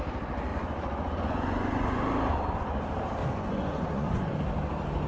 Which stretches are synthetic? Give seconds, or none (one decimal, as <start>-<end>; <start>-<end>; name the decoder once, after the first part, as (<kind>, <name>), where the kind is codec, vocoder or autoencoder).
0.5-2.0 (vocoder, Vocos); 3.2-4.3